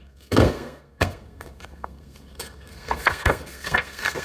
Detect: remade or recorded remade